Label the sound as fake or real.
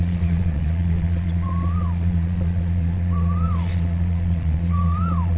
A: fake